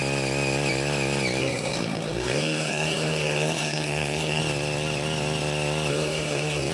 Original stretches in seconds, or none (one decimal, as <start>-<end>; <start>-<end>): 0.0-1.4; 4.4-5.9